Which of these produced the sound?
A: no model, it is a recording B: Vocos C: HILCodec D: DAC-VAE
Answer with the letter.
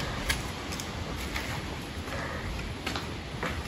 A